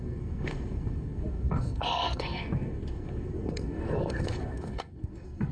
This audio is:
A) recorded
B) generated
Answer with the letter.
B